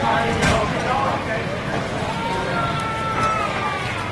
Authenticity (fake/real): real